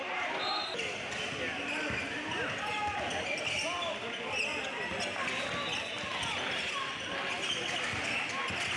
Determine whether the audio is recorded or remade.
recorded